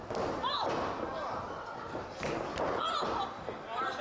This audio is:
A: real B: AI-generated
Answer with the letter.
A